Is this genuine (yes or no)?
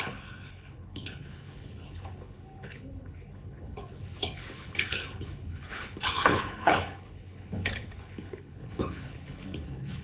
no